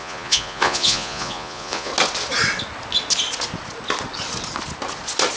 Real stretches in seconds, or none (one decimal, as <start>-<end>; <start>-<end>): 1.9-5.4